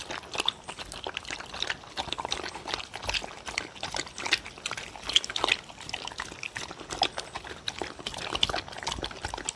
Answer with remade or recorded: recorded